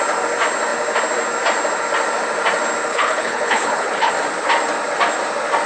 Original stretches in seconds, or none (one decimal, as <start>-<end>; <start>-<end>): 0.0-2.9; 4.1-5.7